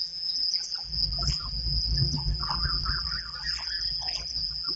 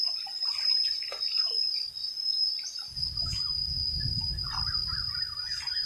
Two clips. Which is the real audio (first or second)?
second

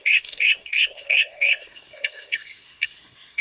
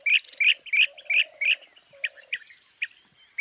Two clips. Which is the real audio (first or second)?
second